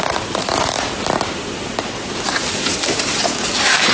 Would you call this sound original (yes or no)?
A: yes